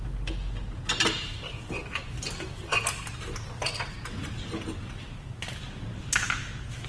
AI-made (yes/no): no